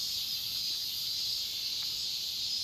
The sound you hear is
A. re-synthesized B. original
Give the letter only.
A